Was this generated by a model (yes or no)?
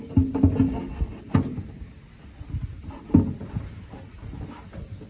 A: no